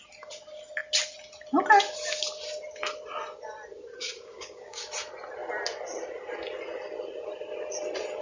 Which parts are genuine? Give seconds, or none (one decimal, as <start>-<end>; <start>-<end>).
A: 0.0-4.0; 4.8-8.2